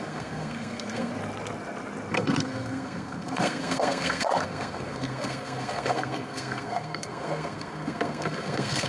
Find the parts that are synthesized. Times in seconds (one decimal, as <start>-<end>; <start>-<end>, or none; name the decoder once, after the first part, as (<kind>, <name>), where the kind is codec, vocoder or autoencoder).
0.0-1.1 (codec, SNAC); 2.1-8.9